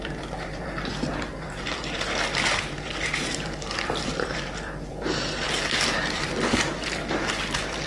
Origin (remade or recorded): remade